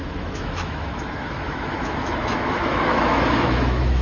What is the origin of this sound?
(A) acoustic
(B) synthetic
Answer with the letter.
B